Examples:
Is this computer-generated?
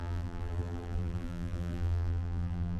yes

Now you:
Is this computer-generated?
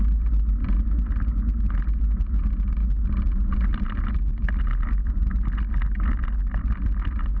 no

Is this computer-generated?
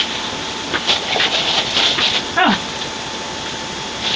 no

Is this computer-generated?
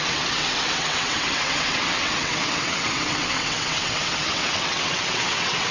yes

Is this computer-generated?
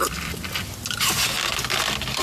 no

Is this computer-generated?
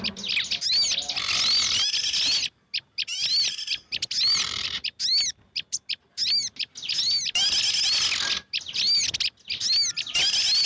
no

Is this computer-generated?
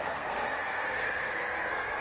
yes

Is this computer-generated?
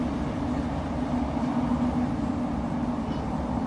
no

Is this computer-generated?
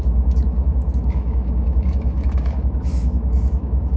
yes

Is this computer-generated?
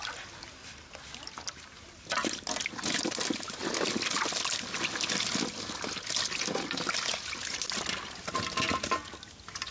no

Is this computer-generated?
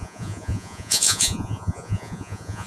yes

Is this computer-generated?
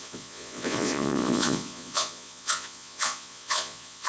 yes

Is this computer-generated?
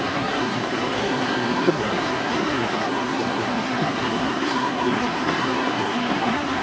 yes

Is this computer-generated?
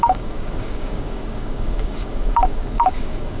yes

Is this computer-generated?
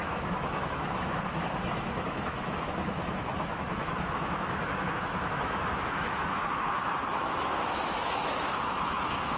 yes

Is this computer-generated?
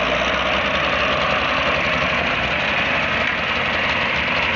no